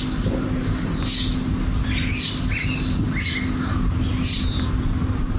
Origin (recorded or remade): recorded